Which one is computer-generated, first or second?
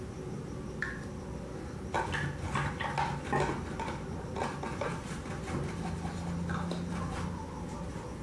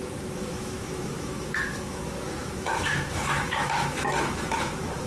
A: second